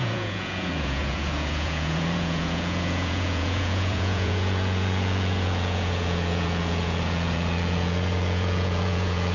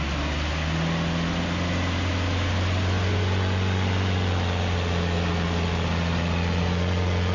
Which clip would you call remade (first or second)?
first